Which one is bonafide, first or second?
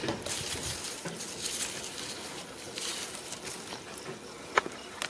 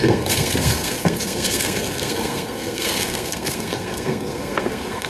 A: first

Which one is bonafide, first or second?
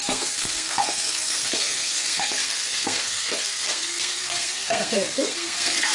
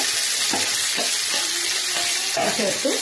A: second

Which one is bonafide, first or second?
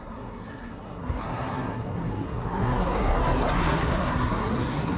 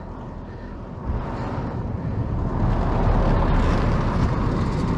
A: second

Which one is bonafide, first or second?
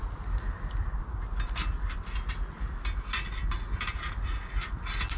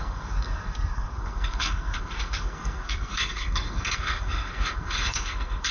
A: first